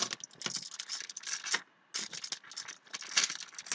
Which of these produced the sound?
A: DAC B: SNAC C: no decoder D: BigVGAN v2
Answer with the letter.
C